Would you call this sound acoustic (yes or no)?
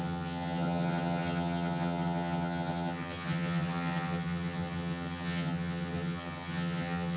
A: no